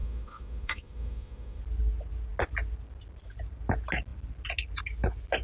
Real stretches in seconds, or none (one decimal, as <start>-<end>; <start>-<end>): 1.6-5.4